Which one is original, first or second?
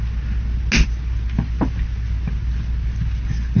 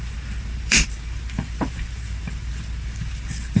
first